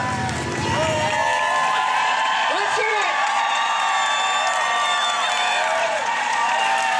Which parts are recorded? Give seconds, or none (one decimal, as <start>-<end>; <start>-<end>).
0.0-2.0; 3.8-5.8; 6.6-7.0